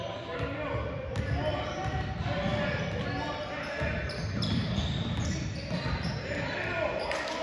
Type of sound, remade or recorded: recorded